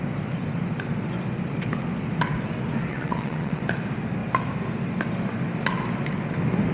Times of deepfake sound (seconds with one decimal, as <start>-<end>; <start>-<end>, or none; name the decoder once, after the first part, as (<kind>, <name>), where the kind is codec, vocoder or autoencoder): 2.9-3.6 (vocoder, WaveNeXt)